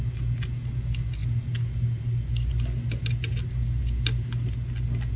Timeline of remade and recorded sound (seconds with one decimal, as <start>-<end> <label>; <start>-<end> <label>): 0.0-5.2 recorded